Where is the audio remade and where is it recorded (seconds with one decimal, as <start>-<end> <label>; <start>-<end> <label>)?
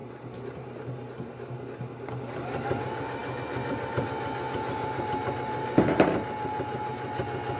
0.0-7.6 recorded